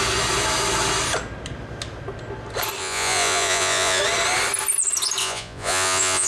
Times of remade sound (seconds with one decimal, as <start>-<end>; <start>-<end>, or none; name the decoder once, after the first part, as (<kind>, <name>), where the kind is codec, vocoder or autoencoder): 2.8-4.0 (vocoder, Vocos); 5.2-6.3